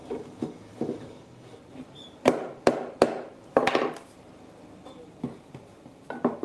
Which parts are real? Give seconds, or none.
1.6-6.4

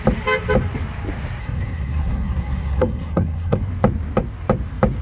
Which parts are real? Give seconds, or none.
0.0-1.4; 3.6-5.0

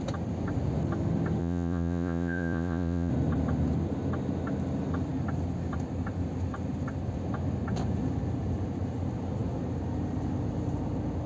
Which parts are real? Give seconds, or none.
0.0-1.4; 3.1-11.3

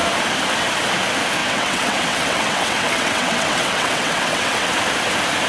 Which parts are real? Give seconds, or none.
0.0-1.4; 4.7-5.5

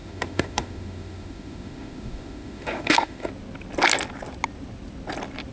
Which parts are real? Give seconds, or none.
3.3-5.5